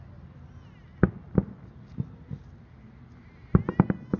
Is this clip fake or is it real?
real